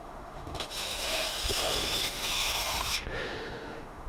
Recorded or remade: remade